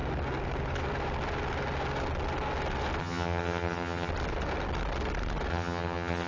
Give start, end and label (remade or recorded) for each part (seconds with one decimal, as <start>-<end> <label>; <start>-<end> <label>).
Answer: 0.0-3.0 recorded; 3.0-4.1 remade; 4.1-5.5 recorded; 5.5-6.3 remade